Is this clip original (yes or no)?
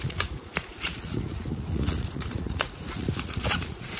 no